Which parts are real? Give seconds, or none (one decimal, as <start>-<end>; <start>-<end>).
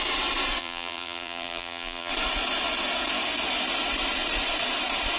0.0-0.6; 2.1-5.2